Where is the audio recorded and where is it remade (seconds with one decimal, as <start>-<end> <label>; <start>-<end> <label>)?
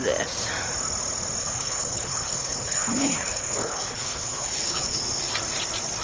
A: 0.0-1.4 recorded; 1.4-5.0 remade; 5.0-6.0 recorded